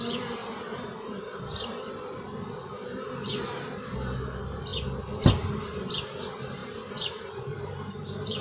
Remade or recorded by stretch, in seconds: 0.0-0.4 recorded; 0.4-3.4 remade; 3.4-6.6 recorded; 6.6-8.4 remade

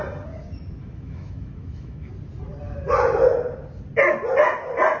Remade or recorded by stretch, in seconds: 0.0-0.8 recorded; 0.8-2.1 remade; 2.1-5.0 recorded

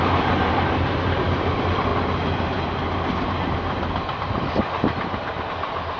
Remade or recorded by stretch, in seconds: 0.0-6.0 recorded